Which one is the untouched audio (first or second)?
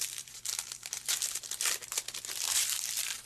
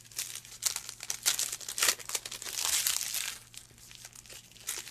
second